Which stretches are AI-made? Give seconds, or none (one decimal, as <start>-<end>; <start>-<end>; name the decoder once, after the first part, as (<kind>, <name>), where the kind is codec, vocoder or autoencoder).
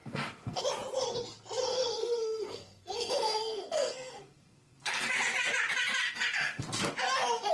0.0-0.6 (codec, SNAC); 1.6-5.1; 6.0-6.6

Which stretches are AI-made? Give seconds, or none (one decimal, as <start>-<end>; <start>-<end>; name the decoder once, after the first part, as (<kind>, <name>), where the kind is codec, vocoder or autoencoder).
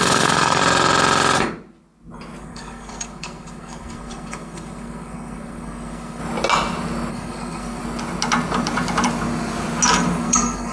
0.0-0.6 (codec, SNAC); 2.4-6.2; 7.1-7.8; 10.2-10.7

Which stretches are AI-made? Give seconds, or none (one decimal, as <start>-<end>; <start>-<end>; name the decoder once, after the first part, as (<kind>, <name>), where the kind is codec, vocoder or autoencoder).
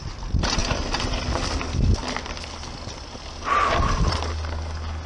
none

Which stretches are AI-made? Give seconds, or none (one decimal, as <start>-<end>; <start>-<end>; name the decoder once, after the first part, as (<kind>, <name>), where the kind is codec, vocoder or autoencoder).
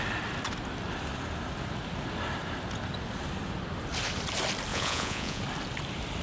4.7-5.4 (vocoder, Vocos)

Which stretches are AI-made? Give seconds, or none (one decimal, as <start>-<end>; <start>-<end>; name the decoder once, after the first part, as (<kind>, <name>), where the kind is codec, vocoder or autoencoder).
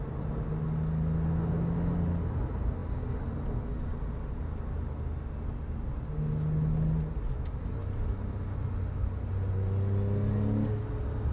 none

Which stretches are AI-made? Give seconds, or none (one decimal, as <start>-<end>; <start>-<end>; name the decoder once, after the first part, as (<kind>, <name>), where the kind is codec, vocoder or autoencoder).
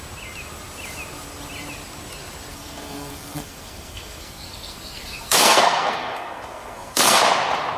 2.5-7.2 (codec, SNAC)